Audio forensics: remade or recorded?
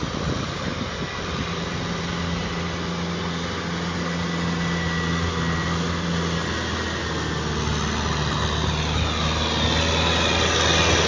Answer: recorded